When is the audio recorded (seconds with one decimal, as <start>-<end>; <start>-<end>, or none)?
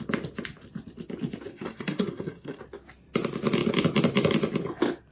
0.0-1.5; 2.6-5.1